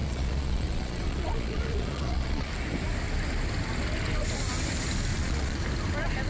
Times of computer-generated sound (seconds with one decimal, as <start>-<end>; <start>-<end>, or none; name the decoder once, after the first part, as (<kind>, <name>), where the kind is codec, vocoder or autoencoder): 0.0-2.5 (vocoder, Vocos); 5.1-5.6